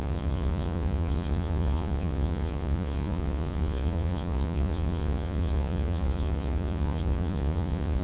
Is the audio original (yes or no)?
no